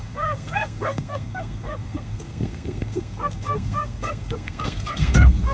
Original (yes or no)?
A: no